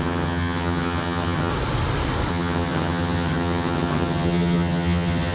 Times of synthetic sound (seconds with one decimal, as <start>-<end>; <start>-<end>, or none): 0.0-1.5; 2.3-5.3